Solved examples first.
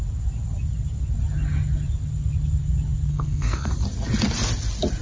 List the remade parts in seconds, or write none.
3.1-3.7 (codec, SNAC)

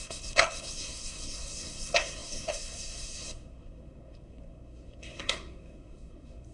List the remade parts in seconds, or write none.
0.0-6.5 (codec, SNAC)

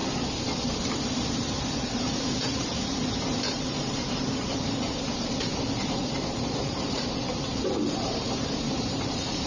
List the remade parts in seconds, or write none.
2.0-9.5 (vocoder, BigVGAN v2)

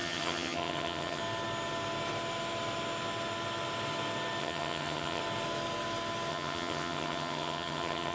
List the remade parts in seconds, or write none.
0.0-1.2 (vocoder, HiFi-GAN); 4.4-5.2; 6.3-8.1